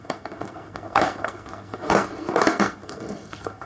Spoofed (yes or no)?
yes